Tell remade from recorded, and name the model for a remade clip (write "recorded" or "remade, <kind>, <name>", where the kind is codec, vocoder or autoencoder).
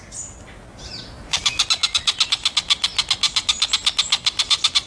recorded